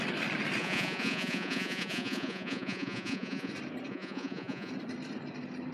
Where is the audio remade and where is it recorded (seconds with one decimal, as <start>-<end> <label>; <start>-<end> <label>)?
0.0-0.6 recorded; 0.6-3.5 remade; 3.5-3.9 recorded; 3.9-4.7 remade; 4.7-5.7 recorded

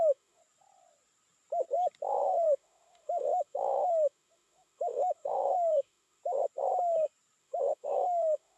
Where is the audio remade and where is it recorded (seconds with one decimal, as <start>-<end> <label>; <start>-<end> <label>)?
0.0-0.4 remade; 0.4-2.1 recorded; 2.1-6.2 remade; 6.2-7.4 recorded; 7.4-8.6 remade

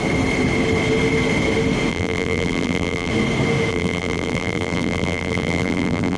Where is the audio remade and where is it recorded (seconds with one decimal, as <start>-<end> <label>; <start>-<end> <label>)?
0.0-1.9 recorded; 1.9-3.1 remade; 3.1-3.7 recorded; 3.7-6.2 remade